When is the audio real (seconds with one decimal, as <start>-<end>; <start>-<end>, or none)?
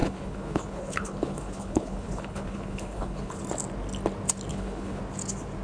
3.4-4.5; 5.0-5.6